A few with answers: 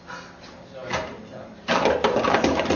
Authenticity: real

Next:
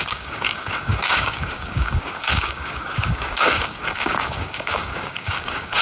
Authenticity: fake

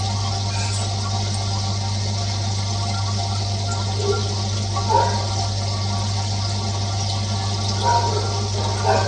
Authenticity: real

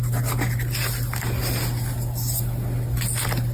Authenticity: real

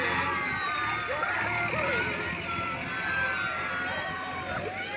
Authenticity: real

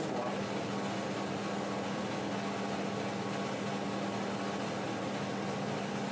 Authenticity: real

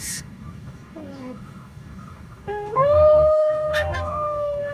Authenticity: fake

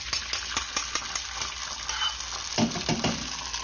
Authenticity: real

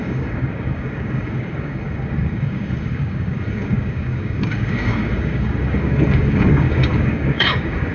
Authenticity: fake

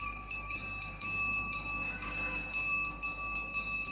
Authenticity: fake